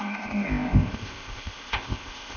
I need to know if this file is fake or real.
fake